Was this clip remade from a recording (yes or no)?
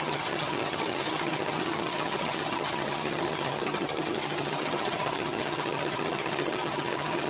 yes